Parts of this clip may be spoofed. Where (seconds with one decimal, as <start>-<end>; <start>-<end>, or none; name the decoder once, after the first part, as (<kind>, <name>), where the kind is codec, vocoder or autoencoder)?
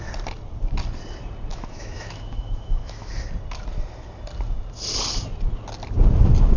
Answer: 1.5-3.1 (autoencoder, DAC-VAE)